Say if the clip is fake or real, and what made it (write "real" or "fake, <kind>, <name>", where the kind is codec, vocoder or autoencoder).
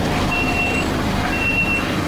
fake, vocoder, BigVGAN v2